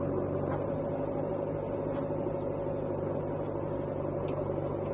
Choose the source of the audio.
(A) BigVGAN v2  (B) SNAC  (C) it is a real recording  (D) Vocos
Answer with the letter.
C